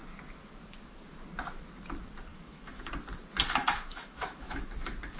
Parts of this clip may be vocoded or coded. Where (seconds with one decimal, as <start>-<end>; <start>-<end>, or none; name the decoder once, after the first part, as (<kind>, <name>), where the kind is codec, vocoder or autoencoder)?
2.3-2.9 (autoencoder, DAC-VAE); 3.6-4.7